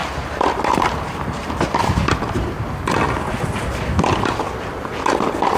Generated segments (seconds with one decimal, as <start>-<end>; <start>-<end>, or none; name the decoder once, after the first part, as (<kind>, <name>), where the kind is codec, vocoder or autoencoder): 0.0-1.8 (vocoder, BigVGAN v2)